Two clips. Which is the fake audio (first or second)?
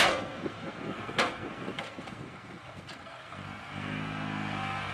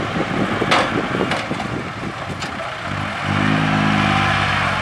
first